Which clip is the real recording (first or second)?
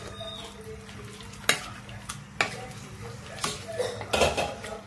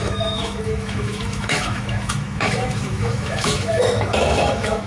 first